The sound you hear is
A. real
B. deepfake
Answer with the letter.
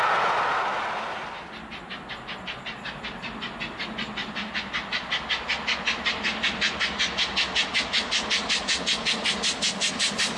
A